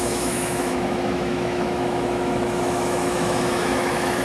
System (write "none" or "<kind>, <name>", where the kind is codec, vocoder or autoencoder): autoencoder, DAC-VAE